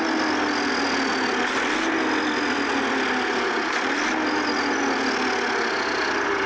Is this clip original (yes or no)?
yes